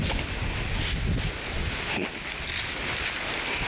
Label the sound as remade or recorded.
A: recorded